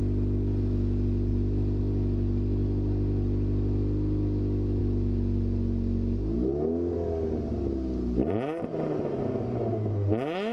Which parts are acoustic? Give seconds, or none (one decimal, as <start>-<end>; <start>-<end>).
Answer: 0.0-10.5